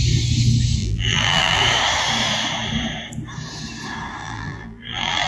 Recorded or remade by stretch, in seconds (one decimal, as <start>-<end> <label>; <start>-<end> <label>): 0.0-0.8 recorded; 0.8-1.6 remade; 1.6-4.2 recorded; 4.2-5.3 remade